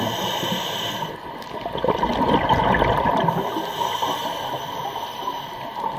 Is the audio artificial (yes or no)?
no